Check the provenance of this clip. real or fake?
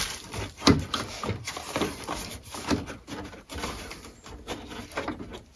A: real